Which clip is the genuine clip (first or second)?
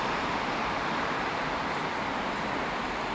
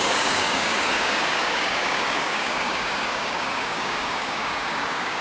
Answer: first